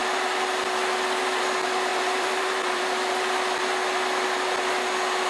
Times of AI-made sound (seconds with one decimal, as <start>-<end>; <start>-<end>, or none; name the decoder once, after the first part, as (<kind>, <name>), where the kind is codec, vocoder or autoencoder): 1.9-2.8 (vocoder, BigVGAN v2)